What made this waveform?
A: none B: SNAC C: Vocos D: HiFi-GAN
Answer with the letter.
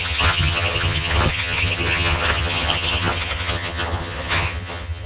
D